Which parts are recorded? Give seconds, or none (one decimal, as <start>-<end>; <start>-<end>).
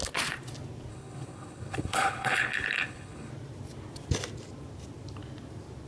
0.0-0.9; 3.3-5.9